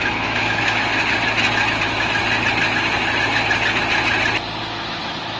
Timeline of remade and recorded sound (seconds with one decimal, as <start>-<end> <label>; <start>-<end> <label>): 0.0-0.9 remade; 0.9-1.8 recorded; 1.8-2.2 remade; 2.2-4.6 recorded; 4.6-5.4 remade